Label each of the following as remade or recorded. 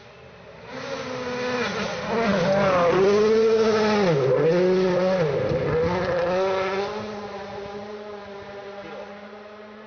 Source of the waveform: recorded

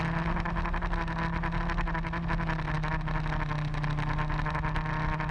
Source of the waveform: recorded